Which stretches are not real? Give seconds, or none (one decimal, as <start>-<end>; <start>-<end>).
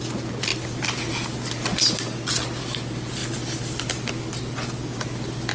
none